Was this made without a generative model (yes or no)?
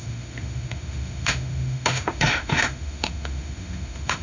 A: no